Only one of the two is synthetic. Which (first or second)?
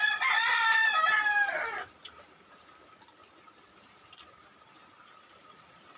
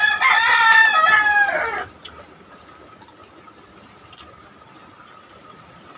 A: first